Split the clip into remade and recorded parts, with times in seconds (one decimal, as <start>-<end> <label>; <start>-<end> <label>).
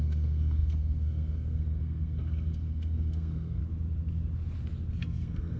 0.0-3.6 remade; 3.6-5.0 recorded; 5.0-5.6 remade